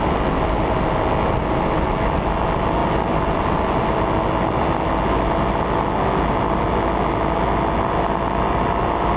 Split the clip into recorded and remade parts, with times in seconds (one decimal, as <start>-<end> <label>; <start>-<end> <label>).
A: 0.0-9.2 recorded